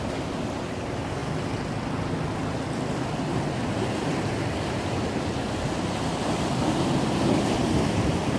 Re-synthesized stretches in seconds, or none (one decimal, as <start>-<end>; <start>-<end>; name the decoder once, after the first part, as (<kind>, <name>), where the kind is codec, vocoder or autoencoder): 0.0-1.2 (vocoder, BigVGAN v2); 6.2-8.4